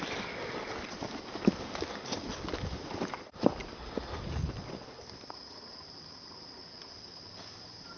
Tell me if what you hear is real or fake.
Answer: real